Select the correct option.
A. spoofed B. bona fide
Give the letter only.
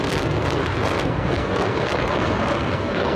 A